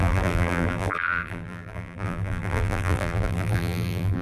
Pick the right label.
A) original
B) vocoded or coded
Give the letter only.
B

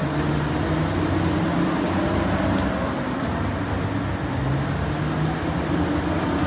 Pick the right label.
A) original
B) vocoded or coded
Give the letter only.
A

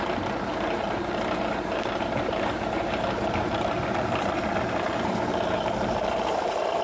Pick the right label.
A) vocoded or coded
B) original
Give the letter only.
A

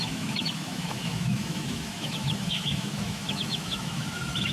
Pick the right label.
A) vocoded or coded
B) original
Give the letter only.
A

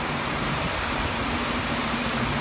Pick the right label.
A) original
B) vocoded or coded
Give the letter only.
B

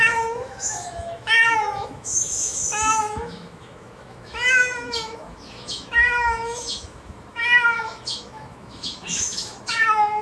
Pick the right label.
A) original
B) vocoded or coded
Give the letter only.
B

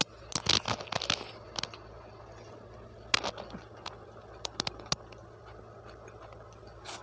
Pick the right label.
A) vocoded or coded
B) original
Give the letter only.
B